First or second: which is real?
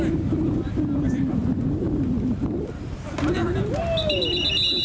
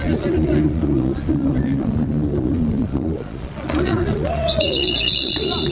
first